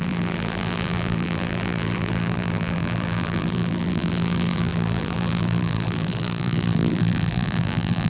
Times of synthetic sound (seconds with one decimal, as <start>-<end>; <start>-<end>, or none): 0.0-8.1